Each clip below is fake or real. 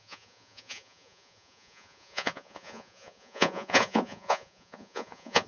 fake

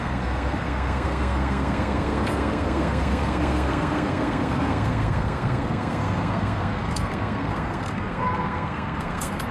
fake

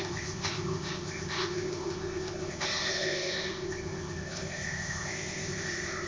fake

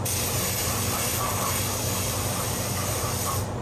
fake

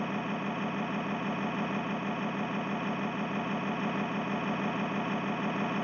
real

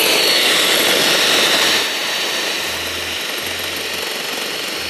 real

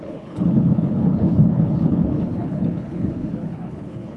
fake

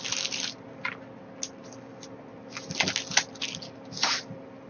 real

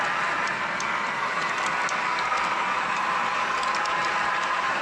real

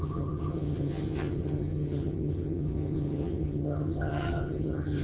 fake